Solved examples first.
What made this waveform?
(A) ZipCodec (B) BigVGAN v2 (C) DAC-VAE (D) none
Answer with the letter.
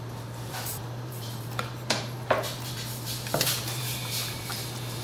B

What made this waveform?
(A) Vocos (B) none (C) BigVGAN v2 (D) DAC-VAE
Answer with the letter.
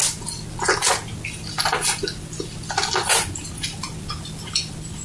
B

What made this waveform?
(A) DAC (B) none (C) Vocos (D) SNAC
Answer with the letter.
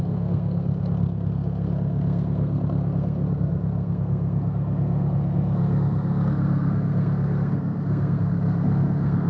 D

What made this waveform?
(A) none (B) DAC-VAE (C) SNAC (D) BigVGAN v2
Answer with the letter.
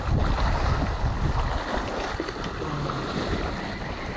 A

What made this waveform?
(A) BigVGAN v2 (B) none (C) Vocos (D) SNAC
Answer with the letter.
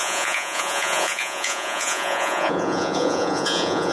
C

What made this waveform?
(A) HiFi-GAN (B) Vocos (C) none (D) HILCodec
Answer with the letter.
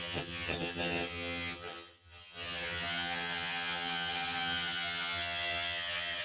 A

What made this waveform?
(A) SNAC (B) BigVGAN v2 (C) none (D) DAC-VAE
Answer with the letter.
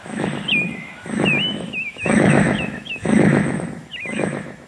D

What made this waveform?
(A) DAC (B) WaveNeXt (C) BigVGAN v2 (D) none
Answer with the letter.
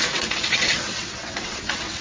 B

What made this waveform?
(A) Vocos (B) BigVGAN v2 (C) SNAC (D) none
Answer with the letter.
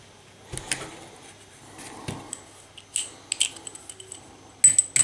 D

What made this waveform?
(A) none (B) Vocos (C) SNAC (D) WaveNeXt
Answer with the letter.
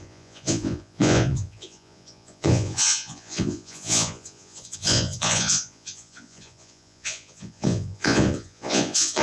B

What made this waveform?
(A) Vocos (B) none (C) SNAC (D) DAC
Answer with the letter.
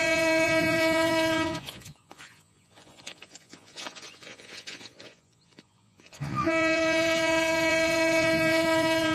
A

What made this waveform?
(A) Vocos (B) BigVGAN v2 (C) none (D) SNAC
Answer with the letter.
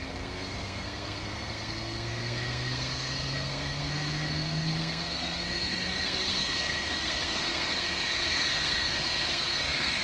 D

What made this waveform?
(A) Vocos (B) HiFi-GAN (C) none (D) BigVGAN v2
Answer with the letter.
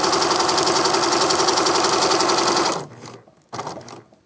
C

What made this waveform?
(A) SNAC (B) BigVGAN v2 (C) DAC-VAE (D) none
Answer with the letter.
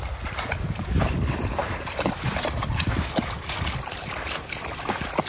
D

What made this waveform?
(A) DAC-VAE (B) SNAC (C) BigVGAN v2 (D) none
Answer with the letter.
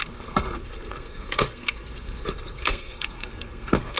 B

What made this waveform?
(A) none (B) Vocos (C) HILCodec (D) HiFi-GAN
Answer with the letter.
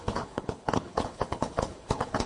C